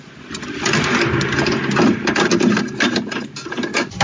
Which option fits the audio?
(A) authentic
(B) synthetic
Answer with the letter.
A